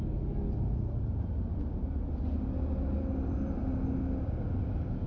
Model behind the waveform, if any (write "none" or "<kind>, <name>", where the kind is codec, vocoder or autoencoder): none